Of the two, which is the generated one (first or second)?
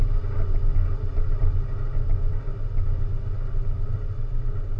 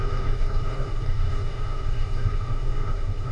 second